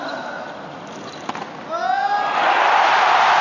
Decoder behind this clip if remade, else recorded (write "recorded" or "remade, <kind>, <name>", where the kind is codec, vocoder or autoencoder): recorded